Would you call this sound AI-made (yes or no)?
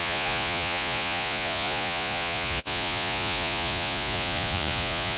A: yes